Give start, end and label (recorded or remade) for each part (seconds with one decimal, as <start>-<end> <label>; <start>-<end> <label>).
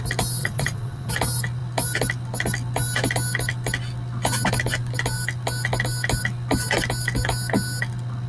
0.0-0.4 recorded; 0.4-1.1 remade; 1.1-8.3 recorded